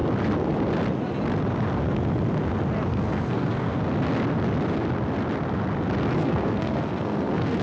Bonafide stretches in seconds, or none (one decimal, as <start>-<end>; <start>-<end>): 0.0-2.9; 3.8-6.2